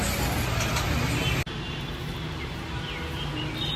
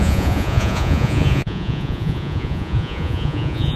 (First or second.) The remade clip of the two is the second